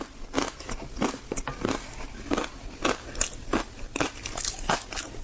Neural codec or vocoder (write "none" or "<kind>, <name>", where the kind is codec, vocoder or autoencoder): none